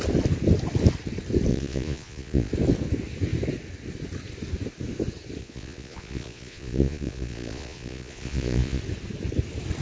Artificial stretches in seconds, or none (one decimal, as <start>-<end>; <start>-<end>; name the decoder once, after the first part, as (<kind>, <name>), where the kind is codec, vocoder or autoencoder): 1.5-2.5 (vocoder, Vocos); 5.4-8.8